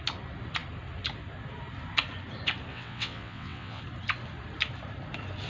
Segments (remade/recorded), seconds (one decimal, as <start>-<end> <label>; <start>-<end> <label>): 0.0-2.7 recorded; 2.7-3.8 remade; 3.8-5.5 recorded